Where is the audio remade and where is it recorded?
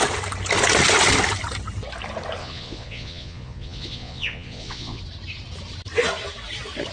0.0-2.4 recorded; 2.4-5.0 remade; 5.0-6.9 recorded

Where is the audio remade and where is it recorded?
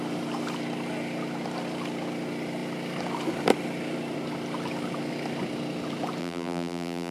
0.0-6.2 recorded; 6.2-7.1 remade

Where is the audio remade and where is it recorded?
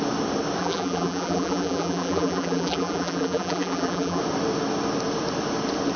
0.0-0.6 recorded; 0.6-4.2 remade; 4.2-6.0 recorded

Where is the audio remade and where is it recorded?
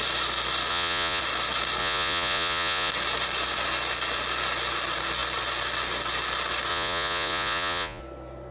0.0-0.7 recorded; 0.7-1.2 remade; 1.2-1.8 recorded; 1.8-2.9 remade; 2.9-6.7 recorded; 6.7-8.0 remade; 8.0-8.5 recorded